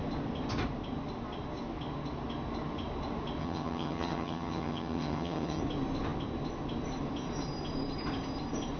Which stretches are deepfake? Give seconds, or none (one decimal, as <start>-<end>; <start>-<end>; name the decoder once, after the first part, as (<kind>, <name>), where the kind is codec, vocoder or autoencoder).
3.4-5.6 (vocoder, HiFi-GAN)